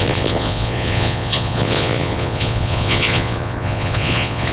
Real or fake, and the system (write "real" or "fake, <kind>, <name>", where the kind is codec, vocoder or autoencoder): fake, vocoder, Vocos